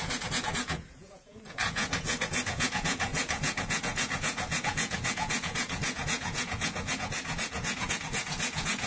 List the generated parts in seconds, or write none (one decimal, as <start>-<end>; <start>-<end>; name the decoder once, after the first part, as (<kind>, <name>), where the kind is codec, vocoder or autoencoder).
0.0-8.9 (vocoder, Vocos)